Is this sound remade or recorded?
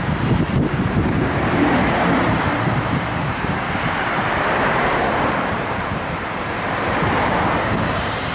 remade